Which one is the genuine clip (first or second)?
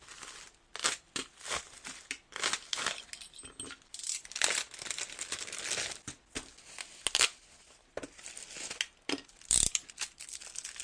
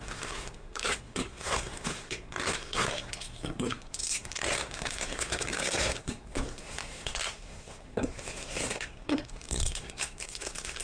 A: first